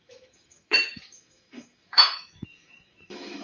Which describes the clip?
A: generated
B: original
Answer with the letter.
A